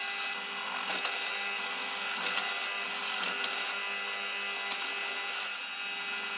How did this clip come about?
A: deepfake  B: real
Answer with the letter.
B